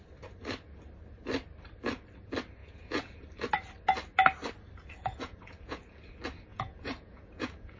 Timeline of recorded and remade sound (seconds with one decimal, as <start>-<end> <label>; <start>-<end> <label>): 0.0-2.6 recorded; 2.6-3.2 remade; 3.2-5.0 recorded; 5.0-5.8 remade; 5.8-6.5 recorded; 6.5-7.8 remade